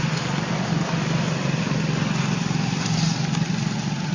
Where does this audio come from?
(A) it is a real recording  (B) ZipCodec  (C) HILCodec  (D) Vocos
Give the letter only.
A